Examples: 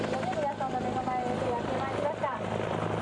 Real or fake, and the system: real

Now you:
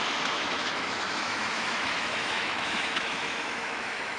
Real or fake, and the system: fake, autoencoder, DAC-VAE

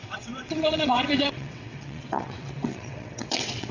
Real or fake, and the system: fake, vocoder, WaveNeXt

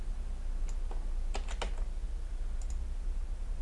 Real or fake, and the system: real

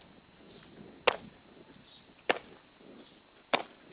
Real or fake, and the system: real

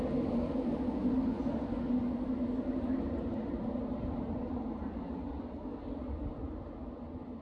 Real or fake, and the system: real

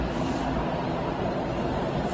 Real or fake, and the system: real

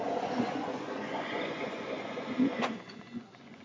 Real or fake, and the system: fake, vocoder, Vocos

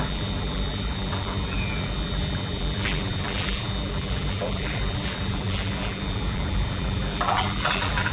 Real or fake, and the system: fake, vocoder, BigVGAN v2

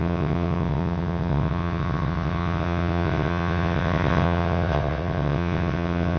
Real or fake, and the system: fake, vocoder, WaveNeXt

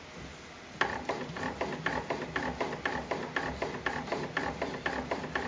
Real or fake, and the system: real